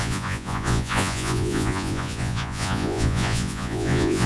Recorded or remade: remade